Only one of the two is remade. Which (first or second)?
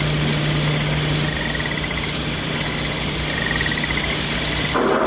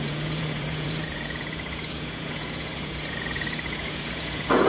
second